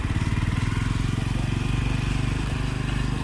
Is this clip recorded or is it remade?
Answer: recorded